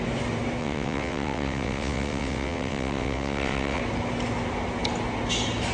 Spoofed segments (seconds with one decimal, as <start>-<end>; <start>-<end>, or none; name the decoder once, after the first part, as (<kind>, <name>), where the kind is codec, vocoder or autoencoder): 0.6-3.8 (vocoder, WaveNeXt)